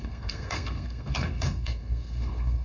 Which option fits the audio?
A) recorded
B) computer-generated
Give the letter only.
B